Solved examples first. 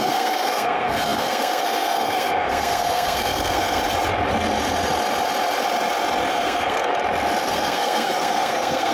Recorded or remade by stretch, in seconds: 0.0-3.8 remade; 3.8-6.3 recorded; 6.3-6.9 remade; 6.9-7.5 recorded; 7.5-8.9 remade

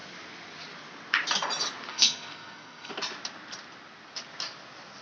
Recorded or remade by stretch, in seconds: 0.0-1.9 recorded; 1.9-2.9 remade; 2.9-5.0 recorded

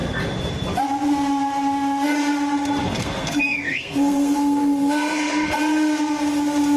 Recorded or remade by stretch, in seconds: 0.0-2.8 recorded; 2.8-5.6 remade; 5.6-6.8 recorded

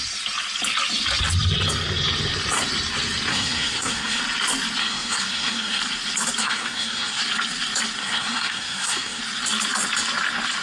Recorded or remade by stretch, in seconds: 0.0-3.3 recorded; 3.3-4.2 remade; 4.2-4.8 recorded; 4.8-5.8 remade; 5.8-6.4 recorded; 6.4-7.2 remade; 7.2-8.0 recorded; 8.0-9.2 remade; 9.2-10.6 recorded

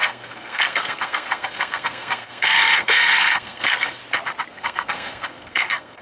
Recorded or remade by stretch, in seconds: 0.0-4.0 remade; 4.0-4.5 recorded; 4.5-6.0 remade

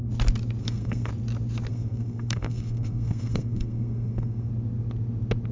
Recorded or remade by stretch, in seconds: 0.0-0.6 recorded; 0.6-1.1 remade; 1.1-1.7 recorded; 1.7-4.5 remade; 4.5-5.5 recorded

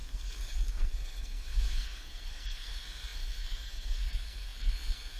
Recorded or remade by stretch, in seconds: 0.0-5.2 remade

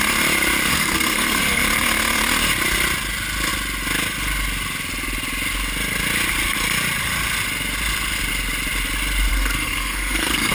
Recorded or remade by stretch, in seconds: 0.0-0.7 recorded; 0.7-1.6 remade; 1.6-9.3 recorded; 9.3-10.5 remade